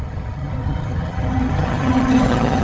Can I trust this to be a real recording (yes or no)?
no